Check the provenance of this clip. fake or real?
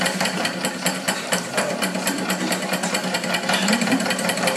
fake